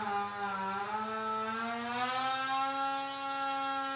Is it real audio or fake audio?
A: real